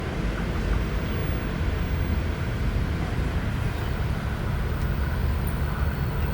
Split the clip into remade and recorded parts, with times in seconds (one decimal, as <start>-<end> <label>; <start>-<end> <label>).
0.0-6.3 recorded